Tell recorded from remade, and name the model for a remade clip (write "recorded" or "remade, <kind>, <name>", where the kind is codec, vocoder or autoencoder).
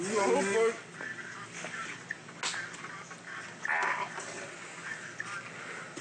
recorded